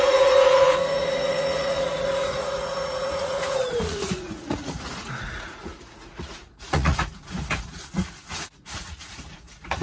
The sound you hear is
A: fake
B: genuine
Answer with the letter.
A